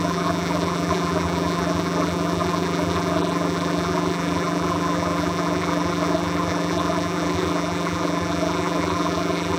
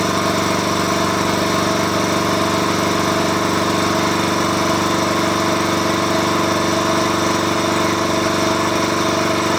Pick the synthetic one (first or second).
first